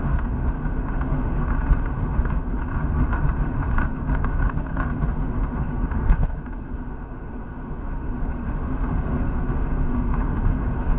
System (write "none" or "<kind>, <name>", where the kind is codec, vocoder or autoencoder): autoencoder, DAC-VAE